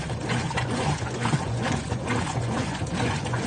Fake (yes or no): yes